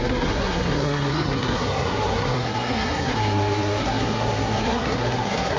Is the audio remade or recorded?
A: remade